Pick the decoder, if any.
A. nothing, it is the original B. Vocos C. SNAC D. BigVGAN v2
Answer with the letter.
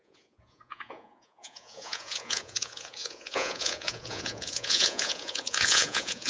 B